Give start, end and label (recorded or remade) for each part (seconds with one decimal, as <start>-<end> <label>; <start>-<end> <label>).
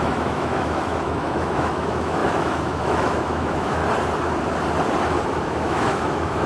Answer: 0.0-3.8 remade; 3.8-5.4 recorded; 5.4-6.5 remade